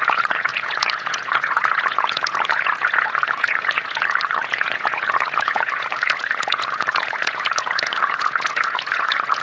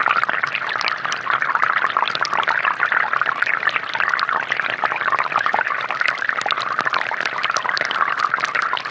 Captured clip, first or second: second